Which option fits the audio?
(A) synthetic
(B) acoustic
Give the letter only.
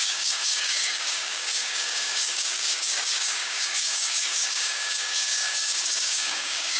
A